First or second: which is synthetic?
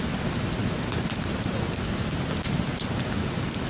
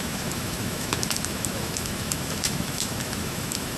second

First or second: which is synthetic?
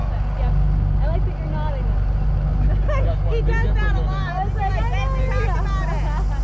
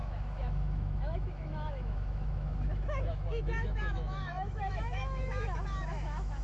second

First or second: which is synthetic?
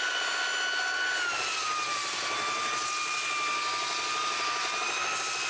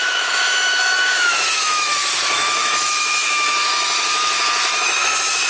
second